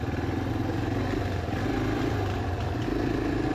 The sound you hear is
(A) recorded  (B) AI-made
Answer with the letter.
A